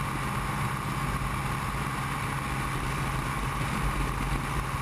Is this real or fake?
real